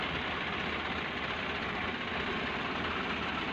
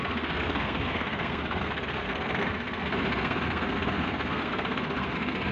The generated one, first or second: second